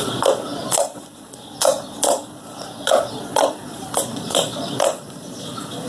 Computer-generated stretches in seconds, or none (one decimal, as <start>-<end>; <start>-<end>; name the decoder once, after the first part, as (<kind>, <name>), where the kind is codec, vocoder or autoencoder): 0.0-5.9 (vocoder, Vocos)